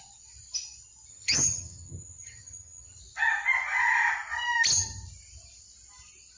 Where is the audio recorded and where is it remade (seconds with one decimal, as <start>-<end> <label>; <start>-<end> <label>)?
0.0-1.1 recorded; 1.1-3.0 remade; 3.0-6.4 recorded